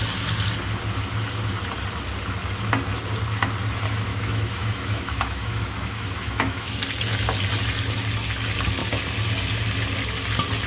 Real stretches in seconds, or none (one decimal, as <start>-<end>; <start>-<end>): 0.0-4.1; 6.7-10.7